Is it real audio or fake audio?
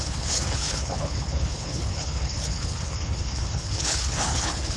fake